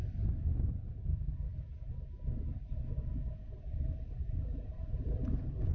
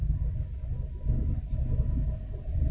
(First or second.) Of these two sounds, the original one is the second